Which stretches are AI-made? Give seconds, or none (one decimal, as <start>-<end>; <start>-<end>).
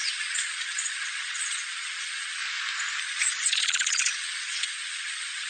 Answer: 0.0-2.4; 3.0-5.5